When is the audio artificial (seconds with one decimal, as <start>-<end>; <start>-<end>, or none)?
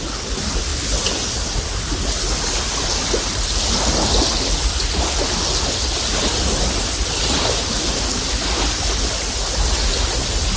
none